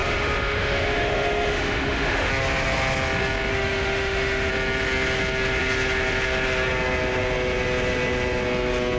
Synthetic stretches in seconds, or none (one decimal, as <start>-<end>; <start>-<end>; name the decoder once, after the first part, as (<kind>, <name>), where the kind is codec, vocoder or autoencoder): 0.0-2.3 (autoencoder, DAC-VAE); 3.5-4.5